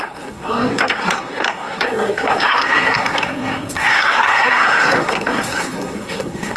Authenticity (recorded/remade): remade